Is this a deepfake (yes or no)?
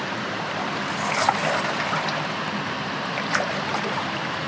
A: yes